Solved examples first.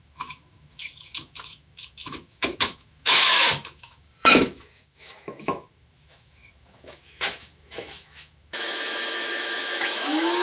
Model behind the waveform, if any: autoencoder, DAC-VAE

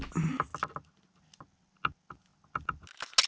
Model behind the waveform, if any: none